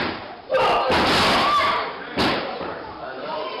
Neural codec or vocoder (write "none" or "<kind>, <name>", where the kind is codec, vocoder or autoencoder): none